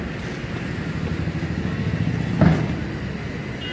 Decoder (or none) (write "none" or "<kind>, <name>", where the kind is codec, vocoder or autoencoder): none